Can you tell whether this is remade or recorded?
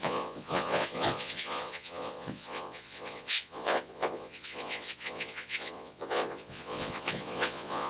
remade